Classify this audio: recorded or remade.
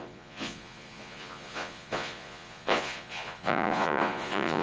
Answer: remade